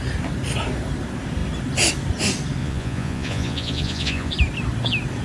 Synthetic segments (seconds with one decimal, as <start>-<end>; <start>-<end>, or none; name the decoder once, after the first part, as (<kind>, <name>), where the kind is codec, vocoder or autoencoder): 2.6-4.3 (vocoder, Vocos)